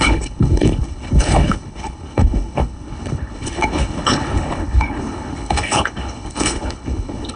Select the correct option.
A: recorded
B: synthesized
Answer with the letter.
B